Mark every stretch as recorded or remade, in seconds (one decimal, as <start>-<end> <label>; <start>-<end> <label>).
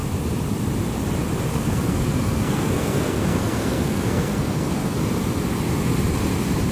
0.0-1.5 recorded; 1.5-5.0 remade; 5.0-6.7 recorded